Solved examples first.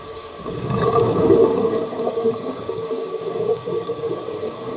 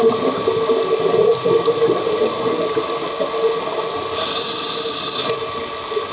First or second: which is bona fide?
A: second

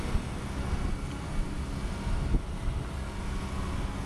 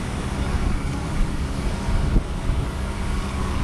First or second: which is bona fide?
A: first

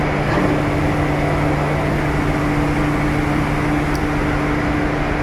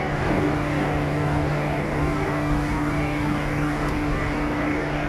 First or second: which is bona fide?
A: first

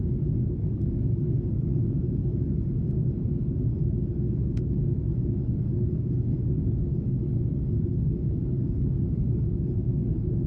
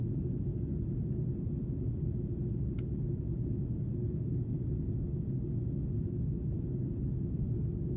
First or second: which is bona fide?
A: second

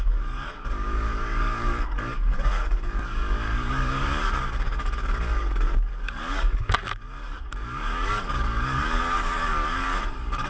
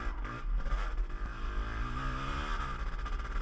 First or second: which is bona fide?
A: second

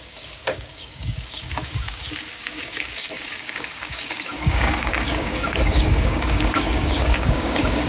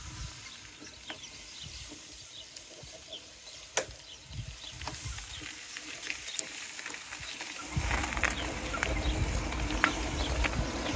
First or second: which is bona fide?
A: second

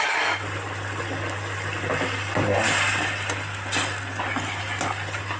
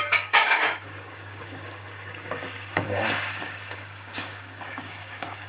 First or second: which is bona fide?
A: first